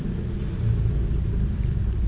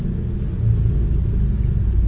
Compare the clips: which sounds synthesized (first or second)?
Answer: first